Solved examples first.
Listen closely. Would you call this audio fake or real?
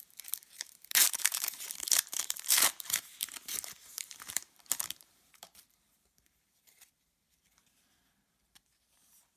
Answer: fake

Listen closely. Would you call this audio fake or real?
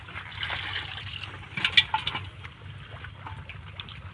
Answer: real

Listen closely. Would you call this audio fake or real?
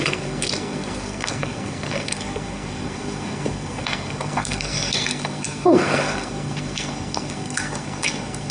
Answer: fake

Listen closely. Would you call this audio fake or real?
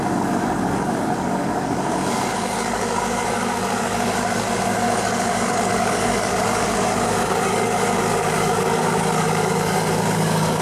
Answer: fake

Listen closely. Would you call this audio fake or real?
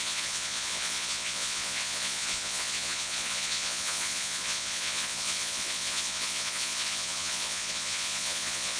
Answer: fake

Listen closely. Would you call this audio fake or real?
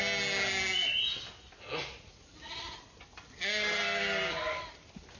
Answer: real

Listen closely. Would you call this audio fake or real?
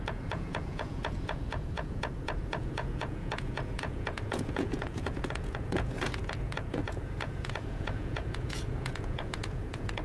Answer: fake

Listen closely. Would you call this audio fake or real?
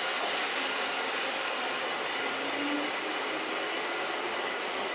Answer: real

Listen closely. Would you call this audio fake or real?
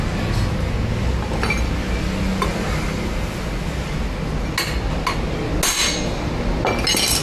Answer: real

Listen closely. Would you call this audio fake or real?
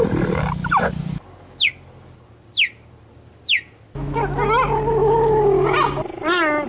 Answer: real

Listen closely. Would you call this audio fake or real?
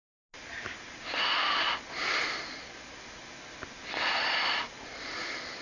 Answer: real